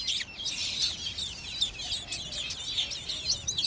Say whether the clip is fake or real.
real